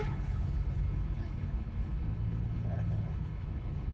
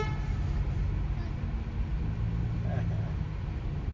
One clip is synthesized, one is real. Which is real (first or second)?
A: second